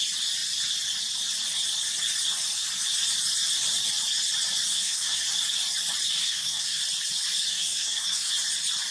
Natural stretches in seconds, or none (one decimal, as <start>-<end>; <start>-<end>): 0.0-4.7; 5.2-6.2; 6.8-7.5; 8.3-8.9